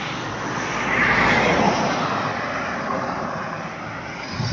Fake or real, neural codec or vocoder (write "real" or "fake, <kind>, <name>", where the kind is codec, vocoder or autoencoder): real